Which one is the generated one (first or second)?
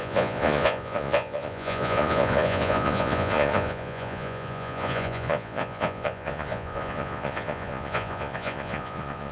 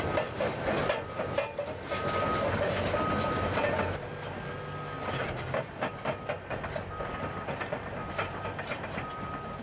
first